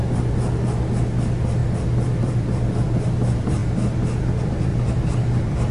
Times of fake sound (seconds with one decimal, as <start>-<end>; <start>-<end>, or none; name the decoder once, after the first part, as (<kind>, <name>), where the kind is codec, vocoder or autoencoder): 1.6-2.7 (vocoder, BigVGAN v2); 4.7-5.7